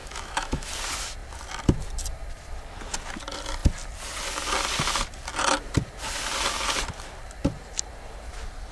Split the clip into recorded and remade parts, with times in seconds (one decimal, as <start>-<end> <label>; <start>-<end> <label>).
0.0-0.7 remade; 0.7-8.7 recorded